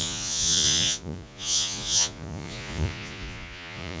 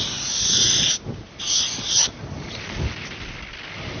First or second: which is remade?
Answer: first